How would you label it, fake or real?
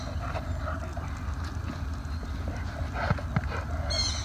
real